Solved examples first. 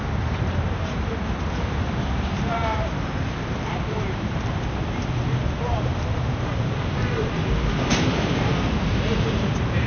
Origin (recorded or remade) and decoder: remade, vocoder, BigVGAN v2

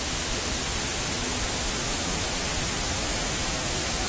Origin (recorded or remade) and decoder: recorded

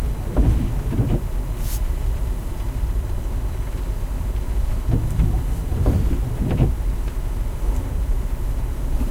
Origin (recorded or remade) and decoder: remade, vocoder, BigVGAN v2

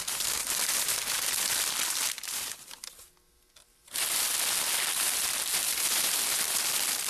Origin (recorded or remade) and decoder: recorded